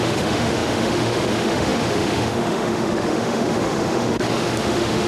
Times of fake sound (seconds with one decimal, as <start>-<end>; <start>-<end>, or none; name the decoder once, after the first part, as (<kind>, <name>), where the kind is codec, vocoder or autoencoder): 0.0-5.1 (autoencoder, DAC-VAE)